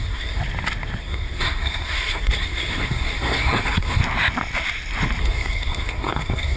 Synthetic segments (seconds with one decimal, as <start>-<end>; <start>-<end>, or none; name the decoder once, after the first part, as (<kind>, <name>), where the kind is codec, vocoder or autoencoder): 0.0-0.4 (codec, SNAC); 1.0-4.0; 5.2-6.6